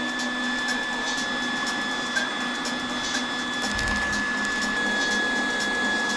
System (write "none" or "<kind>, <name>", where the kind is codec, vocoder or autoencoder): none